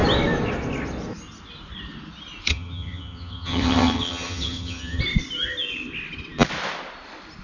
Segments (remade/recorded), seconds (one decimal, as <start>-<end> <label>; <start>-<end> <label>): 0.0-2.5 recorded; 2.5-5.0 remade; 5.0-7.4 recorded